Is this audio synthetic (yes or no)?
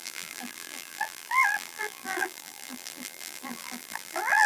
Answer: yes